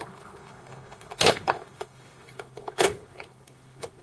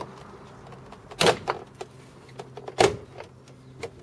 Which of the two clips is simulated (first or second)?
first